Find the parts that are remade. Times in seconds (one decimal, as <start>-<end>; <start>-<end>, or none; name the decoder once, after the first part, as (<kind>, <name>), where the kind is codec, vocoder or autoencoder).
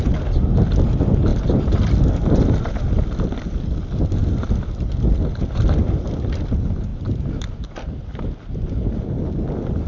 1.3-1.8 (vocoder, BigVGAN v2); 6.9-8.8